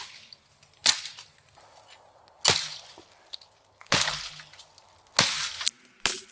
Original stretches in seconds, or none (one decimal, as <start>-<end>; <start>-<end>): 0.0-6.3